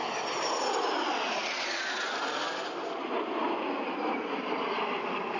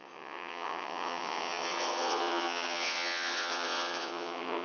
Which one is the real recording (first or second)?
first